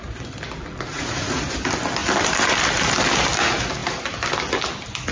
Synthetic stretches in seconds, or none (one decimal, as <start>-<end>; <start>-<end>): 0.9-1.5